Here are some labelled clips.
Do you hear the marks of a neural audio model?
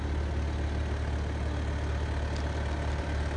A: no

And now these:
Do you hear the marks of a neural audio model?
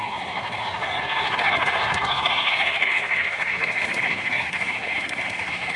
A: yes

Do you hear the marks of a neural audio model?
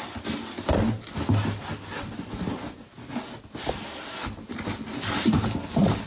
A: no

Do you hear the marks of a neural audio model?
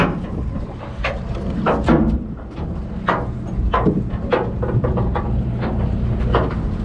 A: no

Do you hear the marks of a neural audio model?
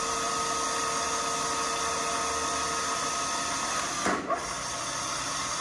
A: no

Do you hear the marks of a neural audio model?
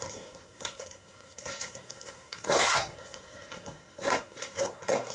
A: yes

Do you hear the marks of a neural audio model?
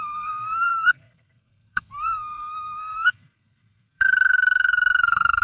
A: yes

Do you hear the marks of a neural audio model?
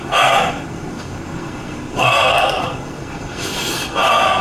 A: yes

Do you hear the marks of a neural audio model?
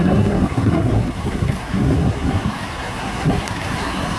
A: yes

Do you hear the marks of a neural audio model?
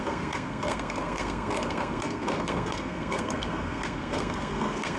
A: yes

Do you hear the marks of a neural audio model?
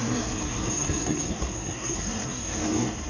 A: yes